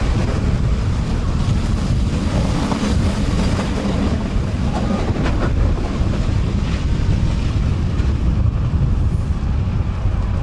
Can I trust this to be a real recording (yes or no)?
yes